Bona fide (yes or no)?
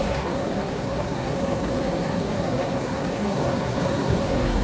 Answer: no